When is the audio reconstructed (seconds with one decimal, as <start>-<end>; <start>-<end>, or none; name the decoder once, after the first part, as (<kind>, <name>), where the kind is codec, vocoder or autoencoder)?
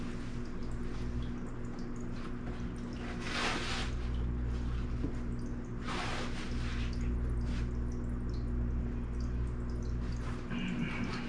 none